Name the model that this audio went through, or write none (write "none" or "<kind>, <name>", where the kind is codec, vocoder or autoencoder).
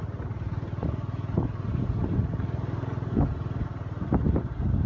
none